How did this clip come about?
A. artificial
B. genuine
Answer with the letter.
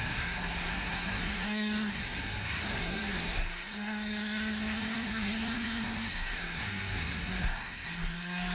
A